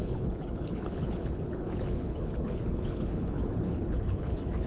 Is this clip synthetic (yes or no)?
yes